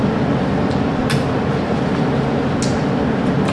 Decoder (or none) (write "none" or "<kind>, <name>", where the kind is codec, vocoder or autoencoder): none